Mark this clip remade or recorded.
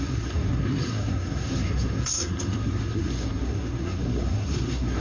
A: remade